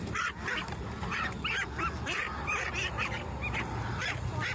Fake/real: real